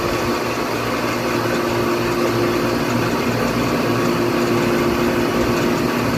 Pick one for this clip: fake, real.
real